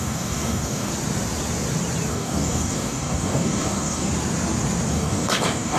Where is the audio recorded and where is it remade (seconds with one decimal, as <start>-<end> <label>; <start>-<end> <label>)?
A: 0.0-0.9 remade; 0.9-2.1 recorded; 2.1-4.1 remade; 4.1-4.9 recorded; 4.9-5.8 remade